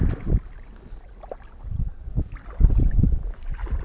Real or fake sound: real